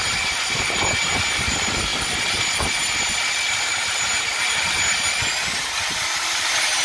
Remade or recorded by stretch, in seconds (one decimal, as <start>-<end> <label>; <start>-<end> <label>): 0.0-6.8 recorded

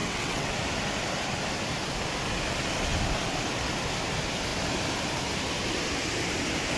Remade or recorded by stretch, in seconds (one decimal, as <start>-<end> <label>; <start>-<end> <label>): 0.0-0.5 remade; 0.5-6.8 recorded

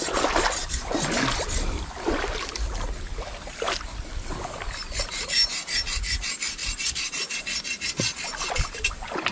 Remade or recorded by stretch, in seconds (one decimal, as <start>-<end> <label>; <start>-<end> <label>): 0.0-9.3 recorded

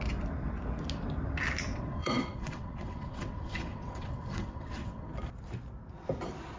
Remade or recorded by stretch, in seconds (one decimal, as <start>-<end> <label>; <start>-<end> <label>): 0.0-1.7 recorded; 1.7-5.1 remade; 5.1-6.6 recorded